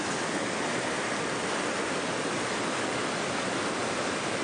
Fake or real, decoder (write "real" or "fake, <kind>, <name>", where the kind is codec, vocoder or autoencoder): real